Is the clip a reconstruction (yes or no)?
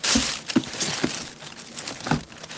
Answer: no